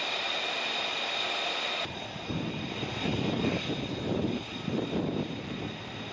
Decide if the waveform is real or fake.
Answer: real